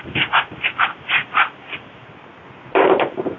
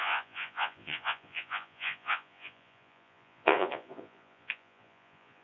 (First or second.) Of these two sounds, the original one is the first